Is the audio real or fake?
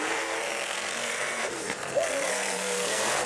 fake